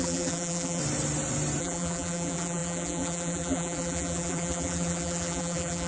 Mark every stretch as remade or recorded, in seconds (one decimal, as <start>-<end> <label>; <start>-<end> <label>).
0.0-0.8 remade; 0.8-1.6 recorded; 1.6-5.9 remade